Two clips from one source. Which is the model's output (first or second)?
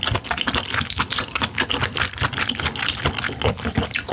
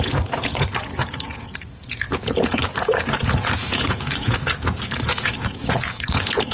second